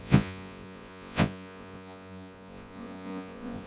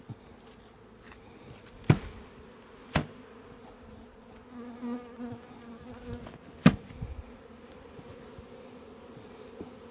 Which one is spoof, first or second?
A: first